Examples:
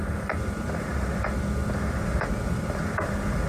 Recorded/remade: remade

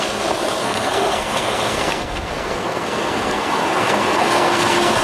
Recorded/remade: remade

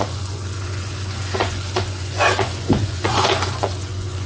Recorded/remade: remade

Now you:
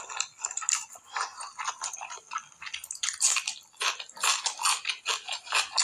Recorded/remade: recorded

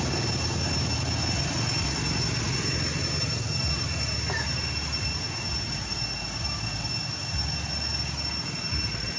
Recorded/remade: recorded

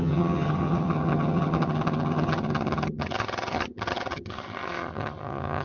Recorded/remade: remade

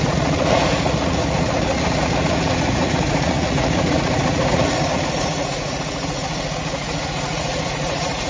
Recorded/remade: remade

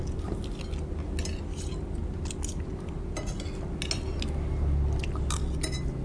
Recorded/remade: recorded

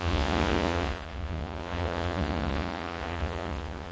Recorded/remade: remade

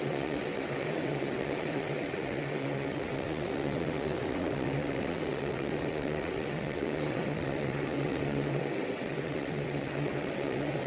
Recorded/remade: remade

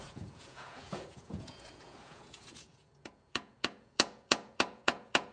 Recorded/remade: remade